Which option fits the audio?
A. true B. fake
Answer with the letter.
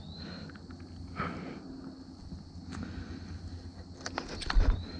A